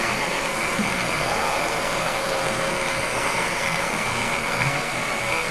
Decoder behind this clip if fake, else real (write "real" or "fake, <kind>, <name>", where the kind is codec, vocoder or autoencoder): fake, codec, SNAC